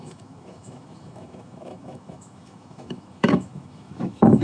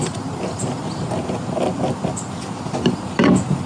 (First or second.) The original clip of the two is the second